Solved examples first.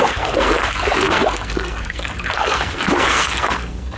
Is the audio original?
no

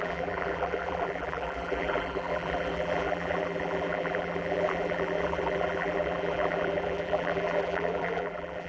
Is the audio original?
no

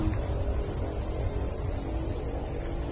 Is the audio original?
yes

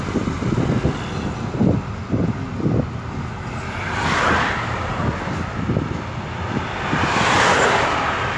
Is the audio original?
yes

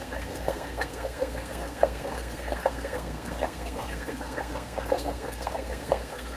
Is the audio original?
no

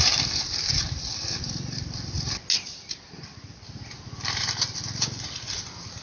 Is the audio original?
yes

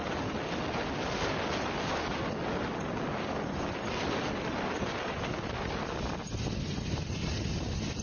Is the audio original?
yes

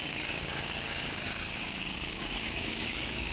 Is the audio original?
no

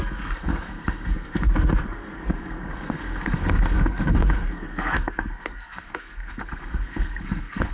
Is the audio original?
no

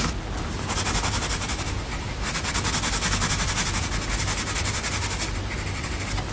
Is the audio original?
yes